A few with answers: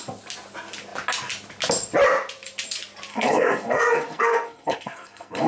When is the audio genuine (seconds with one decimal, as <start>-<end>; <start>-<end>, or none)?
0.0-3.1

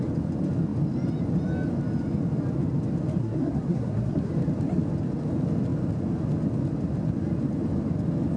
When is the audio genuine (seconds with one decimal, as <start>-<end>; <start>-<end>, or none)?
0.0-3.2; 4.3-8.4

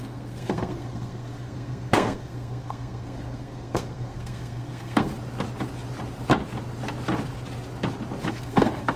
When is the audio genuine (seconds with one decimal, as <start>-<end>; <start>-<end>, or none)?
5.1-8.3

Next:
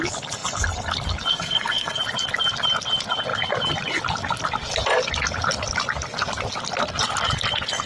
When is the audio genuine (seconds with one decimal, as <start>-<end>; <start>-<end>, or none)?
0.0-1.3; 2.0-7.9

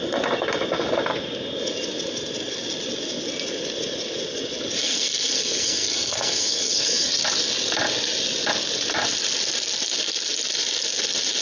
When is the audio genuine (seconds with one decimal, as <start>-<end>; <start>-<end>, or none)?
0.0-4.8; 7.1-11.4